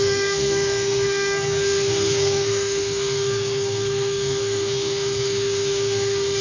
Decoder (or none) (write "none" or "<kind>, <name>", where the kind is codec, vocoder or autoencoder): codec, SNAC